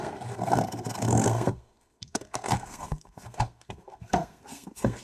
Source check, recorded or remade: remade